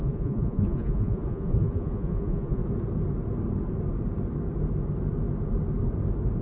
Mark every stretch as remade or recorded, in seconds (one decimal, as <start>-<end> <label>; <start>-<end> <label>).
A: 0.0-2.6 remade; 2.6-6.4 recorded